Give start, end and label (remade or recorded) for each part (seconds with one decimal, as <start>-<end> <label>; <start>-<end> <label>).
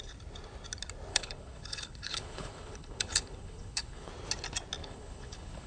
0.0-1.1 recorded; 1.1-4.1 remade; 4.1-4.8 recorded; 4.8-5.7 remade